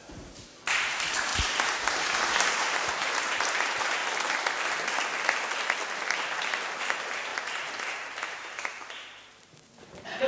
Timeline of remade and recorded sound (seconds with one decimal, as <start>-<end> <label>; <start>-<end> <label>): 0.0-4.0 remade; 4.0-6.8 recorded; 6.8-10.3 remade